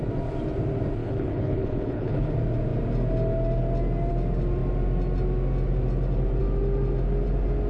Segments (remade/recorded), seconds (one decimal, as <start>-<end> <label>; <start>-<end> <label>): 0.0-1.0 recorded; 1.0-2.3 remade; 2.3-7.7 recorded